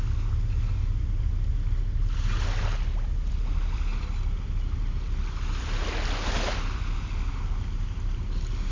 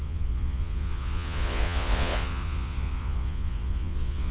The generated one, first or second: second